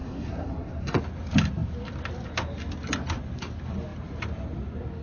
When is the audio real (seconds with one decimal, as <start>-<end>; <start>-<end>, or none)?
1.0-5.0